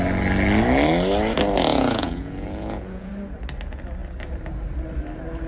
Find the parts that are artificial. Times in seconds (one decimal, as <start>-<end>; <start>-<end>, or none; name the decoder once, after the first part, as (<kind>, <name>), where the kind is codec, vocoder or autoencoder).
1.7-3.1 (vocoder, Vocos)